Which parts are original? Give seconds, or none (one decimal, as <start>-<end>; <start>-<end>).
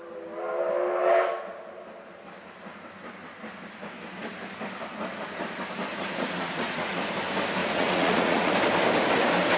0.0-5.9; 7.0-7.6; 8.5-9.6